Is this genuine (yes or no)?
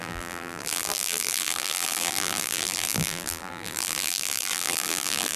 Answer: no